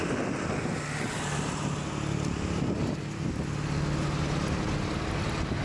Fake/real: real